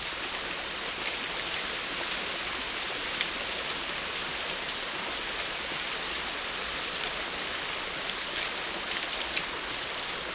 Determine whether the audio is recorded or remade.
recorded